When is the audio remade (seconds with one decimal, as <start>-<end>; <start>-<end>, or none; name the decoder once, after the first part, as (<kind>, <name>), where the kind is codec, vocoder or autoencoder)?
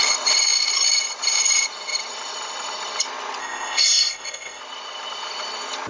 3.4-4.6 (codec, ZipCodec)